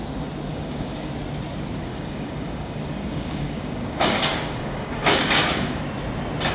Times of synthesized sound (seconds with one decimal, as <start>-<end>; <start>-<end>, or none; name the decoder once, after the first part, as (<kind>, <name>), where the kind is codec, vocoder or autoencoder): 0.5-1.1 (codec, DAC); 1.9-5.8